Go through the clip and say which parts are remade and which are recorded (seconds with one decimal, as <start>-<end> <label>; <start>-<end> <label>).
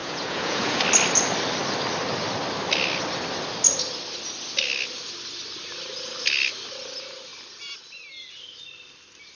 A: 0.0-0.8 remade; 0.8-9.3 recorded